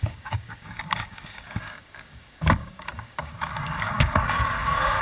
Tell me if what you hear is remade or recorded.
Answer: remade